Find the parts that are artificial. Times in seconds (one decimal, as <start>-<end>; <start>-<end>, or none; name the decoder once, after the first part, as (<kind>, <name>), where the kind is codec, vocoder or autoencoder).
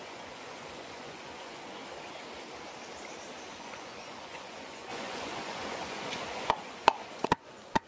0.0-1.8 (vocoder, Vocos); 3.5-7.9